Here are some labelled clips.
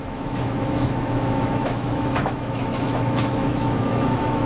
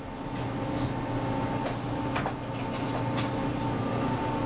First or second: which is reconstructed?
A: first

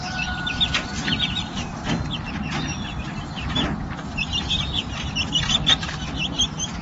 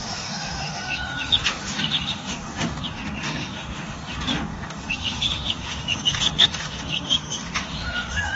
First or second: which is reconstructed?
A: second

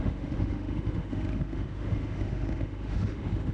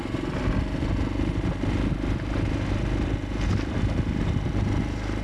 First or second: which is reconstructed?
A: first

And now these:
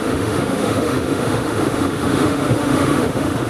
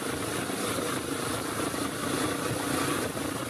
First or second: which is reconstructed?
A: first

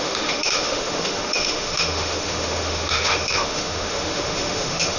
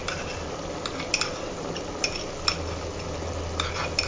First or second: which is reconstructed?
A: first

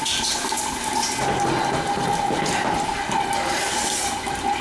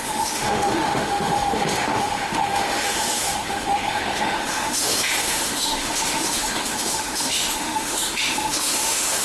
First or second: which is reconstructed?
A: second